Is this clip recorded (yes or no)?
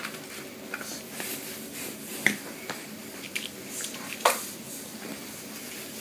yes